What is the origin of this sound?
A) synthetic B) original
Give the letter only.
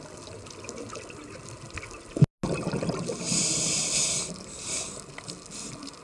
B